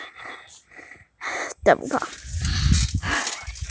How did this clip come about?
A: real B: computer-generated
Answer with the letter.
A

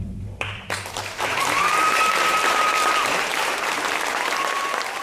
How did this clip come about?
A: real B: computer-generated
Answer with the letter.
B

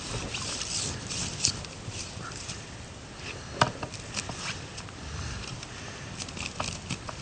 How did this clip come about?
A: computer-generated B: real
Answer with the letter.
A